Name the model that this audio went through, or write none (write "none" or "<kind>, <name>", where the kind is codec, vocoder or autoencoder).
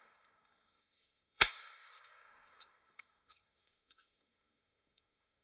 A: codec, SNAC